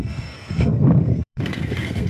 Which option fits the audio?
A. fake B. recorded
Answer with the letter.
A